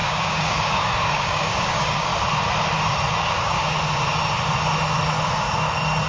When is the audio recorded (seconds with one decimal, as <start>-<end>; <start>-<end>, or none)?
2.1-3.2; 3.6-6.1